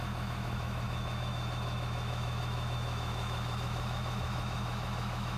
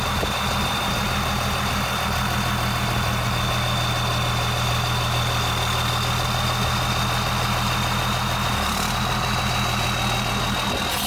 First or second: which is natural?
second